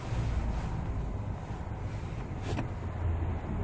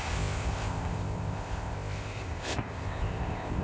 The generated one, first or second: second